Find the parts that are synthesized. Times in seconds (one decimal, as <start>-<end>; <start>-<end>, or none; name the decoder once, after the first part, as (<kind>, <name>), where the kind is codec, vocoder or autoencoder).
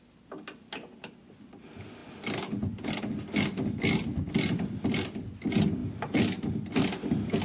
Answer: none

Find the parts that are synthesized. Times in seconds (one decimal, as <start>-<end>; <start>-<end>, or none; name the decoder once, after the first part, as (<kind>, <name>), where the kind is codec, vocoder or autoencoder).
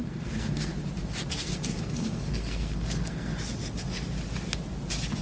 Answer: 0.0-0.7 (codec, SNAC); 1.3-3.3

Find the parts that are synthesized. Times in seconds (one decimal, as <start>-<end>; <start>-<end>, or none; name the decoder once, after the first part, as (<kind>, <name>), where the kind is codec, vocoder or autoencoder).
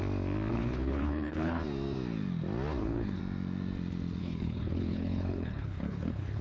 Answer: 0.5-1.6 (codec, HILCodec); 2.8-3.2; 4.2-6.4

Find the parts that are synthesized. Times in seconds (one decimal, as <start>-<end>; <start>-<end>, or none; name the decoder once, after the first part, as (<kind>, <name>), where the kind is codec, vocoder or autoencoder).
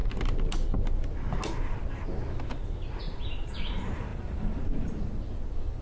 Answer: 3.0-5.8 (vocoder, BigVGAN v2)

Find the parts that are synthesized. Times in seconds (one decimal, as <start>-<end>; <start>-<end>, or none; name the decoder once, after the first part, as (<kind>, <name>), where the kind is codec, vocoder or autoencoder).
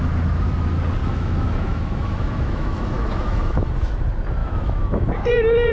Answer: 1.0-3.7 (autoencoder, DAC-VAE); 4.4-5.1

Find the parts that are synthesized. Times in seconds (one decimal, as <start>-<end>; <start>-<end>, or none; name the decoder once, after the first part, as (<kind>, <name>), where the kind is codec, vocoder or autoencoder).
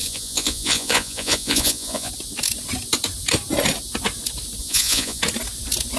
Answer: 0.0-2.1 (vocoder, Vocos); 4.6-5.2